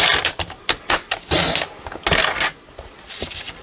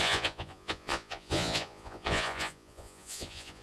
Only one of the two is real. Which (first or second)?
first